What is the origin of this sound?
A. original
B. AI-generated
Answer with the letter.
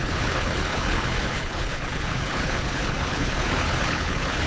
B